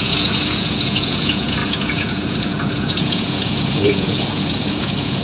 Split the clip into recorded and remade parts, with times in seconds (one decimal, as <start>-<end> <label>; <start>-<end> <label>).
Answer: 0.0-5.2 remade